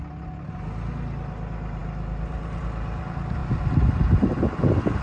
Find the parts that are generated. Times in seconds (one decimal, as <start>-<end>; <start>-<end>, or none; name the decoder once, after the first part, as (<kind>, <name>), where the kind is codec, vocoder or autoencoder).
none